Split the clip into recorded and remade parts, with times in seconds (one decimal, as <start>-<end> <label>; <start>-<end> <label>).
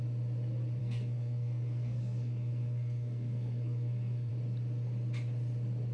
0.0-0.8 recorded; 0.8-4.3 remade; 4.3-5.9 recorded